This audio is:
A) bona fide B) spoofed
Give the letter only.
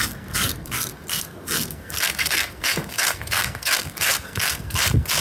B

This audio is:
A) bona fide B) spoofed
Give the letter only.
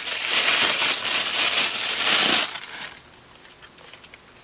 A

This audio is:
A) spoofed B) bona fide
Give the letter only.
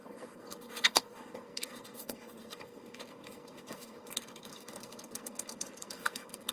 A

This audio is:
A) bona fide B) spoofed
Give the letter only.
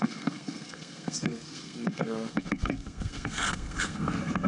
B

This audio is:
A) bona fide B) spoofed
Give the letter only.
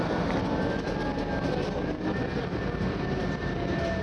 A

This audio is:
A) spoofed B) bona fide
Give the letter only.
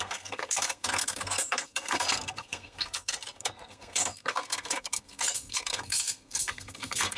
A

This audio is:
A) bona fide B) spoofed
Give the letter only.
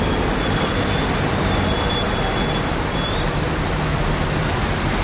A